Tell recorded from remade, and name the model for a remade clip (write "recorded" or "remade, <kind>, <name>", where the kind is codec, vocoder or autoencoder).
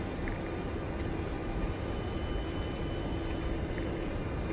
recorded